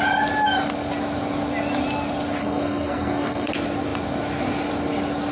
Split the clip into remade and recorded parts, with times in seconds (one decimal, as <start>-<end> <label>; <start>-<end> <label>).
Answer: 0.0-2.4 recorded; 2.4-3.5 remade; 3.5-5.3 recorded